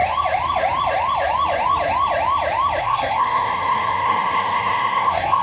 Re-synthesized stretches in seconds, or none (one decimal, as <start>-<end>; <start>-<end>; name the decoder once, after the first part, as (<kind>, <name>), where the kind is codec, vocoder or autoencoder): 2.8-5.4 (codec, SNAC)